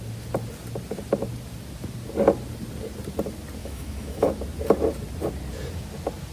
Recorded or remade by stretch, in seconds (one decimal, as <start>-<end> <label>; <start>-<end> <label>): 0.0-3.6 recorded; 3.6-4.3 remade; 4.3-6.3 recorded